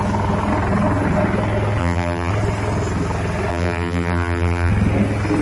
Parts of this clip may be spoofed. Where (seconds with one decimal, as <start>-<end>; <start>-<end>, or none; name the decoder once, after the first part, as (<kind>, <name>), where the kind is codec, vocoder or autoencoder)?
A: 1.8-2.3 (vocoder, BigVGAN v2); 3.5-4.7